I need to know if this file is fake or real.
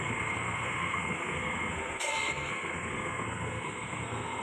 fake